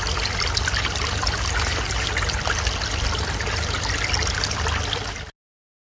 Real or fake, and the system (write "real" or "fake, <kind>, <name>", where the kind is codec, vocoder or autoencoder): real